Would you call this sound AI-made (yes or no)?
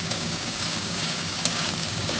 yes